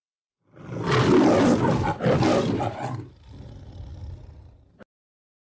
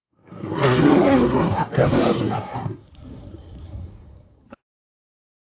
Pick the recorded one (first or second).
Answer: first